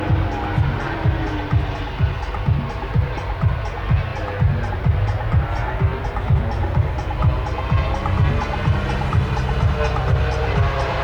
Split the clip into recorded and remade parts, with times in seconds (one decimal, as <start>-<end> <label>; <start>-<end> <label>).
0.0-11.0 recorded